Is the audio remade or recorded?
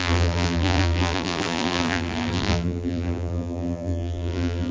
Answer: remade